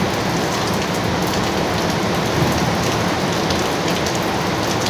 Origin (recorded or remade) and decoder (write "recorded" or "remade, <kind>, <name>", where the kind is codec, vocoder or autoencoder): recorded